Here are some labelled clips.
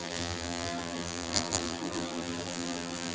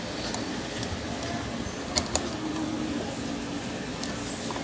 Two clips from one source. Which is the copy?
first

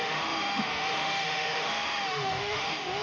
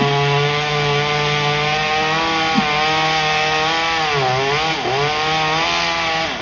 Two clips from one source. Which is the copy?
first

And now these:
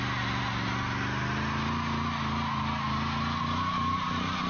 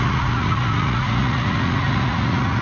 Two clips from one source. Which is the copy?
second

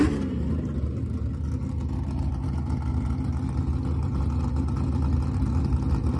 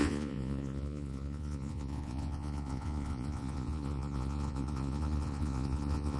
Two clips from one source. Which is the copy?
second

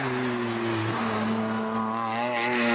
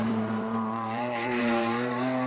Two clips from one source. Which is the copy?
second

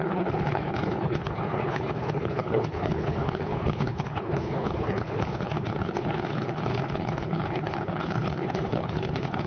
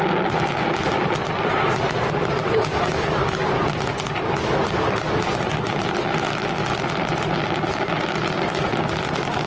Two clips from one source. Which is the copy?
first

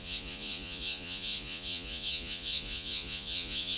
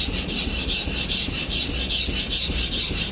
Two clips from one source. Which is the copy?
first